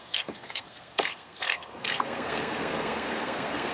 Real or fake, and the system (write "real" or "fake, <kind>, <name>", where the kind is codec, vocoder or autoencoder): fake, codec, SNAC